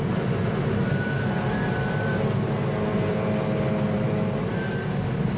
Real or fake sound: real